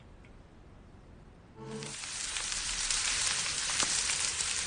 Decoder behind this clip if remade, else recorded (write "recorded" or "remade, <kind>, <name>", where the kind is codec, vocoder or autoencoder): remade, vocoder, BigVGAN v2